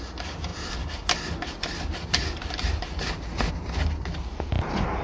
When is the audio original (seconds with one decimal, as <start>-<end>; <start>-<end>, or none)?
0.0-5.0